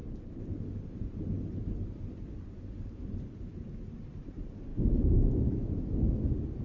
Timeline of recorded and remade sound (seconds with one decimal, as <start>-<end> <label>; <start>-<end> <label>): 0.0-4.7 recorded; 4.7-6.1 remade; 6.1-6.6 recorded